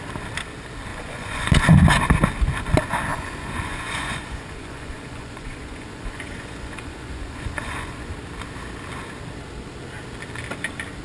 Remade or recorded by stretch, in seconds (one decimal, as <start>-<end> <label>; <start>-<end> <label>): 0.0-0.9 recorded; 0.9-1.5 remade; 1.5-3.1 recorded; 3.1-8.1 remade; 8.1-11.0 recorded